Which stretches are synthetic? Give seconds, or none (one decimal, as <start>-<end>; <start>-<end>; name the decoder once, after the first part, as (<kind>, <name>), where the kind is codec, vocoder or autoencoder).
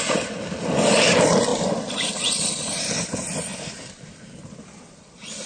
none